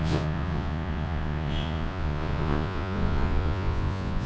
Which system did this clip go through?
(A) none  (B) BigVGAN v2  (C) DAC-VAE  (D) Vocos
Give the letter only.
D